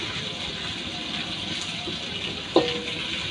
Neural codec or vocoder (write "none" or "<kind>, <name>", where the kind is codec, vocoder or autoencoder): none